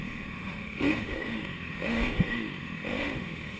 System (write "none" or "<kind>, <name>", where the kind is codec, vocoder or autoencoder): autoencoder, DAC-VAE